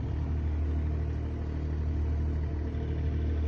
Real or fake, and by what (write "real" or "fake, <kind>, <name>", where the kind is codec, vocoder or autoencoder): real